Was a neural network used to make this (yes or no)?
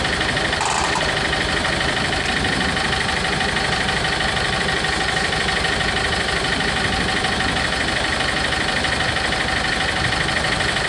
yes